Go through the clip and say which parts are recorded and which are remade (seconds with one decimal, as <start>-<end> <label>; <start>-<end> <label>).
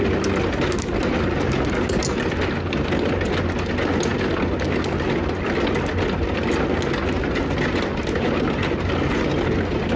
0.0-10.0 recorded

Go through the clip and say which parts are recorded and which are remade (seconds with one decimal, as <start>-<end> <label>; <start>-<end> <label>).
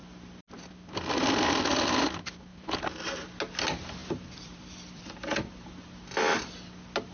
0.0-2.5 recorded; 2.5-3.1 remade; 3.1-4.0 recorded; 4.0-5.9 remade; 5.9-7.1 recorded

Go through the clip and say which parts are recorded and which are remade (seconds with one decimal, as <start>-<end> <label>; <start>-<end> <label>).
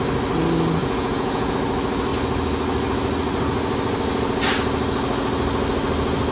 0.0-0.8 recorded; 0.8-1.5 remade; 1.5-6.3 recorded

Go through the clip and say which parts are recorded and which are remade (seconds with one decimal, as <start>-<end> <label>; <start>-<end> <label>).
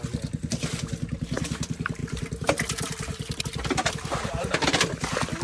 0.0-5.4 recorded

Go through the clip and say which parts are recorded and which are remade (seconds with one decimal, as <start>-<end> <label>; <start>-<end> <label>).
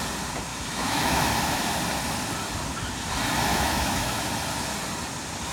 0.0-0.5 recorded; 0.5-1.3 remade; 1.3-3.5 recorded; 3.5-4.2 remade; 4.2-5.5 recorded